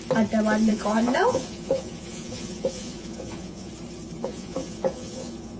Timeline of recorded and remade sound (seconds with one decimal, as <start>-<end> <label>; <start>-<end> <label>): 0.0-0.7 recorded; 0.7-3.7 remade; 3.7-4.2 recorded; 4.2-5.6 remade